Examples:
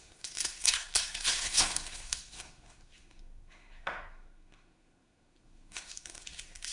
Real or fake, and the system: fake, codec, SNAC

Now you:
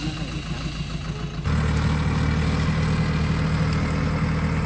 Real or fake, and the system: real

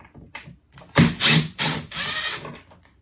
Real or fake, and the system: real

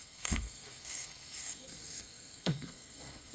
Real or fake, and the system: fake, codec, SNAC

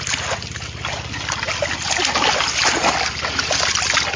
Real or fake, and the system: real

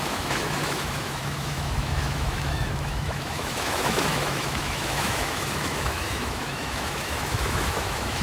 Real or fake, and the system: fake, autoencoder, DAC-VAE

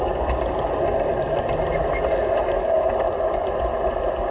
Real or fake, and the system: real